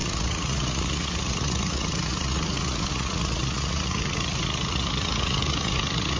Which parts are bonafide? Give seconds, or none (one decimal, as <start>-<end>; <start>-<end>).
none